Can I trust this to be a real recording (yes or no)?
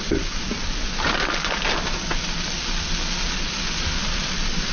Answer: yes